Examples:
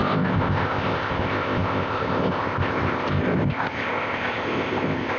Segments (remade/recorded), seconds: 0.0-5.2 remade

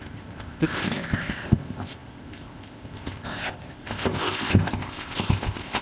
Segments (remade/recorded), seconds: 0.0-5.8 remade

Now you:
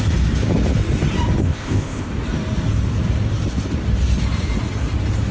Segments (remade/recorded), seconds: 0.0-1.4 recorded; 1.4-2.1 remade; 2.1-5.3 recorded

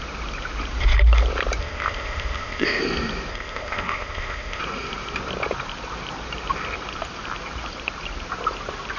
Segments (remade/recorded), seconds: 0.0-1.6 recorded; 1.6-2.8 remade; 2.8-3.3 recorded; 3.3-4.6 remade; 4.6-9.0 recorded

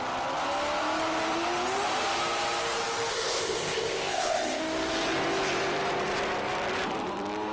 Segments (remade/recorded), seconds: 0.0-3.1 recorded; 3.1-4.6 remade; 4.6-7.5 recorded